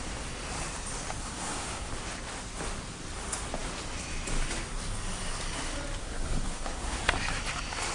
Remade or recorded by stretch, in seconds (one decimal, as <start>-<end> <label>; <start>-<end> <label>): 0.0-1.2 recorded; 1.2-1.9 remade; 1.9-6.0 recorded; 6.0-7.0 remade; 7.0-7.9 recorded